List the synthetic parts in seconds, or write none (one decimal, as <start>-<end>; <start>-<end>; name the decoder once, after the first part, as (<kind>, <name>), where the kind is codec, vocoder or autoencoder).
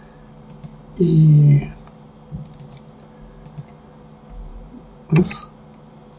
4.5-5.4 (vocoder, BigVGAN v2)